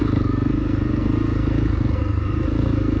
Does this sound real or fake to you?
fake